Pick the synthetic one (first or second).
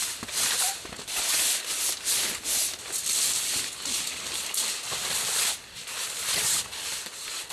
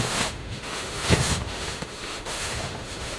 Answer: second